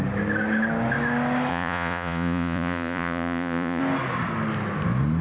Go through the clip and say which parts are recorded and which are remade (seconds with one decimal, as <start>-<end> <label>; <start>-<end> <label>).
0.0-1.5 recorded; 1.5-3.8 remade; 3.8-5.2 recorded

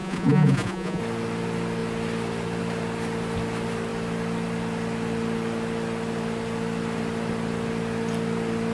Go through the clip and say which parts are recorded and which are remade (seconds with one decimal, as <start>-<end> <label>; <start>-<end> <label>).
0.0-1.0 remade; 1.0-8.7 recorded

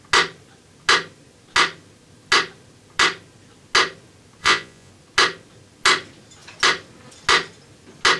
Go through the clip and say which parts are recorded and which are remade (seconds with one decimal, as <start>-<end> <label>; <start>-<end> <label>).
0.0-4.4 recorded; 4.4-4.9 remade; 4.9-8.2 recorded

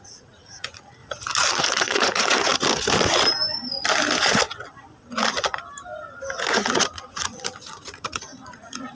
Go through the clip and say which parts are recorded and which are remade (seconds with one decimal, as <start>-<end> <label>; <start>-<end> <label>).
0.0-1.0 remade; 1.0-1.5 recorded; 1.5-2.5 remade; 2.5-6.5 recorded; 6.5-8.9 remade

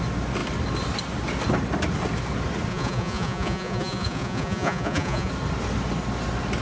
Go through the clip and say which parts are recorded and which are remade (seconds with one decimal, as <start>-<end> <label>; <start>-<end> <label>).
0.0-2.7 recorded; 2.7-5.3 remade; 5.3-6.6 recorded

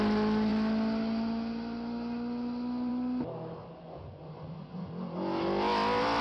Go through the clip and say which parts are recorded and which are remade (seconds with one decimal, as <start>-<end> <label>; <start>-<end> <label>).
0.0-3.6 recorded; 3.6-4.9 remade; 4.9-6.2 recorded

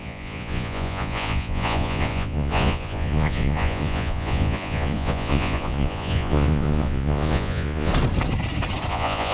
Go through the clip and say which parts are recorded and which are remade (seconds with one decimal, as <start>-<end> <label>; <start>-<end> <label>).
0.0-7.9 remade; 7.9-8.9 recorded; 8.9-9.3 remade